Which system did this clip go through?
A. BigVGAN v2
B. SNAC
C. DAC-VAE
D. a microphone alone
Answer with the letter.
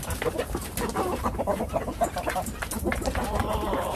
A